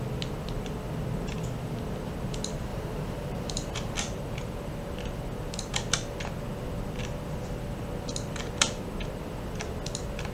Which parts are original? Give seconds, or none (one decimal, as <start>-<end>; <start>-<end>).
0.0-2.7; 4.0-10.3